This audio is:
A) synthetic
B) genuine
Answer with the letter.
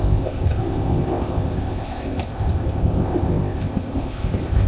A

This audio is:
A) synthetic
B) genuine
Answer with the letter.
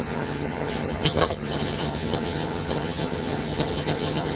A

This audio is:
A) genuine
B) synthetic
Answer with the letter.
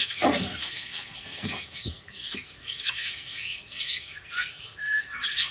B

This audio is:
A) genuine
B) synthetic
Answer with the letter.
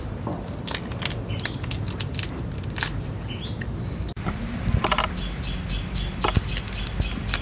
A